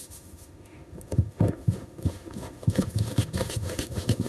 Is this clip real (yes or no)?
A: no